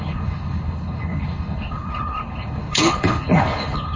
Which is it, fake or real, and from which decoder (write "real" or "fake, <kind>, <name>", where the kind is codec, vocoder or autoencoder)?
fake, codec, HILCodec